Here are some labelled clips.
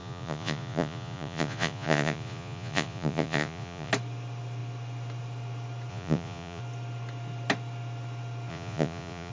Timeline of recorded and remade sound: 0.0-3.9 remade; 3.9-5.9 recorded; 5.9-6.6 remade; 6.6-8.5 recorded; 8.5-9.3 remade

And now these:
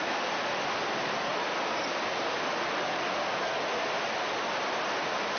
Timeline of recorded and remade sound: 0.0-5.4 recorded

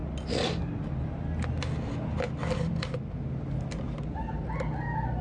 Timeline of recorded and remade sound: 0.0-5.2 recorded

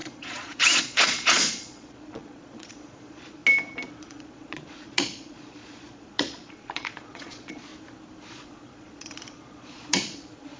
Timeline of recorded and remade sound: 0.0-3.4 remade; 3.4-4.0 recorded; 4.0-7.7 remade; 7.7-8.3 recorded; 8.3-10.6 remade

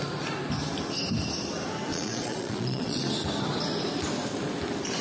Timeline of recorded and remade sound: 0.0-1.9 recorded; 1.9-3.0 remade; 3.0-5.0 recorded

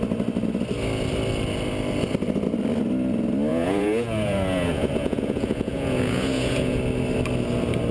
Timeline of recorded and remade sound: 0.0-3.5 recorded; 3.5-6.8 remade; 6.8-7.9 recorded

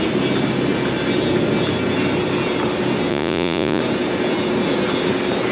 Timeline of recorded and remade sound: 0.0-3.1 recorded; 3.1-3.8 remade; 3.8-5.5 recorded